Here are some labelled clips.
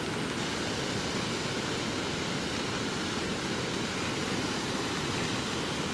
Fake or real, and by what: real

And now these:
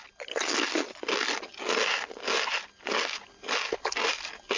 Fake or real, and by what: real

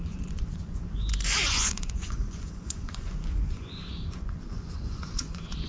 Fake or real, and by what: fake, vocoder, Vocos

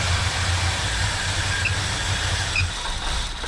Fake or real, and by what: real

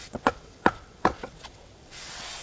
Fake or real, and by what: fake, vocoder, WaveNeXt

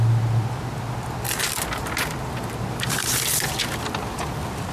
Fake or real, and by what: real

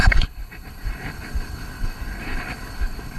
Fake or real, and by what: fake, codec, HILCodec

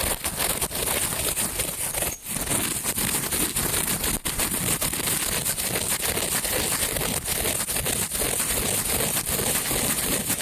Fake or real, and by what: real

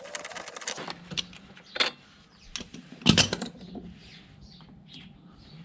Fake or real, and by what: real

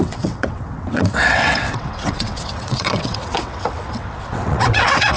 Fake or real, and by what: fake, vocoder, WaveNeXt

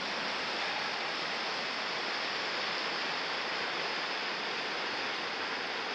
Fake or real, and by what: real